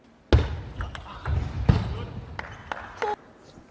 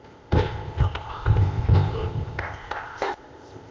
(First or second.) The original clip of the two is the first